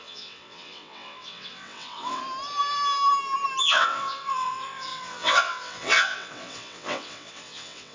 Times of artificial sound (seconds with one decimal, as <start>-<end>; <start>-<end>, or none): 0.0-2.2; 3.6-7.9